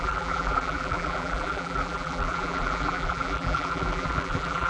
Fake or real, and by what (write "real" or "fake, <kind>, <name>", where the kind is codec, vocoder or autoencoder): fake, vocoder, BigVGAN v2